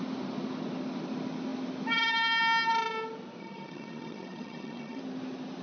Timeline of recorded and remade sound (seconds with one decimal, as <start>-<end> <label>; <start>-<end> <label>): 0.0-3.4 recorded; 3.4-5.0 remade; 5.0-5.6 recorded